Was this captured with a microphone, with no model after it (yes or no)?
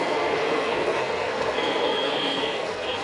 no